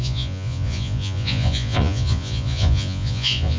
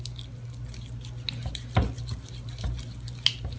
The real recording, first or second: second